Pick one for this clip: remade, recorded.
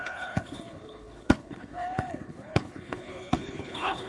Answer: remade